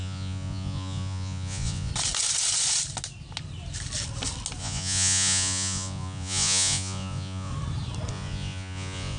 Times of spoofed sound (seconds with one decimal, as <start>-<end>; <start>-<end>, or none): 0.0-1.9; 4.6-7.5; 8.1-9.2